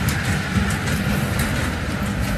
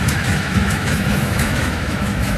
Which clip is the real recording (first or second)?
first